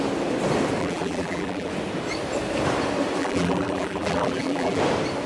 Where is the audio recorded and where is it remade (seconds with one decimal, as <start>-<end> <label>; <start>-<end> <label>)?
0.0-0.8 recorded; 0.8-1.7 remade; 1.7-3.2 recorded; 3.2-4.8 remade; 4.8-5.3 recorded